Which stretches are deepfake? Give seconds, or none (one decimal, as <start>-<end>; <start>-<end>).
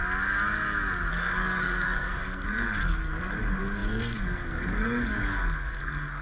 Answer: 1.1-6.2